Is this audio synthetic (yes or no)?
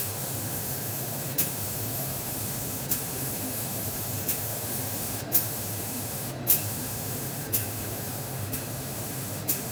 yes